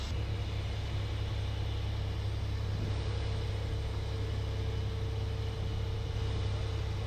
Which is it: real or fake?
real